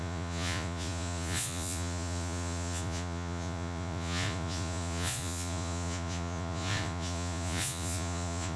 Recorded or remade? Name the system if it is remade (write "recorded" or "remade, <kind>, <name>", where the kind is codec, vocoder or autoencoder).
remade, vocoder, Vocos